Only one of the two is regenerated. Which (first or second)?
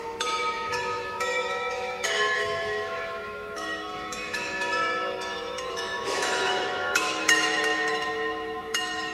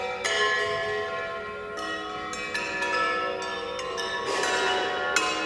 first